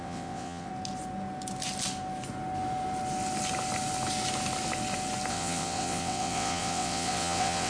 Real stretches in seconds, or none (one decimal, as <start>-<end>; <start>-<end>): 0.7-5.3